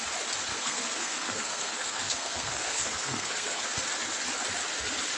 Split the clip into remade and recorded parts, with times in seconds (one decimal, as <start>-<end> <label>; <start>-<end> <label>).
0.0-0.5 recorded; 0.5-3.6 remade; 3.6-5.2 recorded